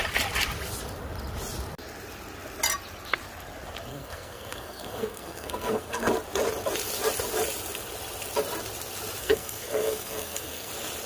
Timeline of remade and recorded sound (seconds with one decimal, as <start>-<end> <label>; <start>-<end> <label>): 0.0-3.9 recorded; 3.9-6.1 remade; 6.1-9.2 recorded; 9.2-10.7 remade; 10.7-11.1 recorded